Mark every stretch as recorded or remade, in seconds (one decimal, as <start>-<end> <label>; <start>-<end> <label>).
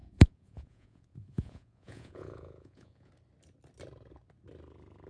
0.0-3.1 remade; 3.1-5.1 recorded